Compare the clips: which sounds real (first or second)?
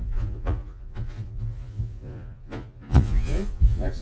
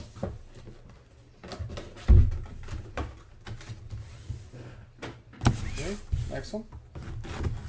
second